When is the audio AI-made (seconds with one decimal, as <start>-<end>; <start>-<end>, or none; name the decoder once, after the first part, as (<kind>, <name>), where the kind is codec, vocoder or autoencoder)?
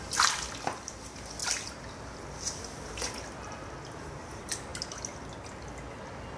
none